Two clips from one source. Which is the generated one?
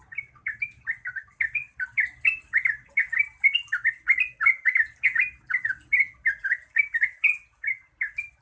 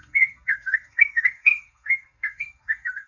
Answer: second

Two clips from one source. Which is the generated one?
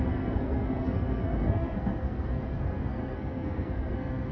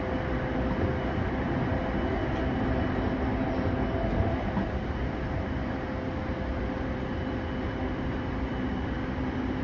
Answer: first